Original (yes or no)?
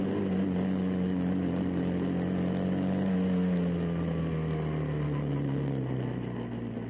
yes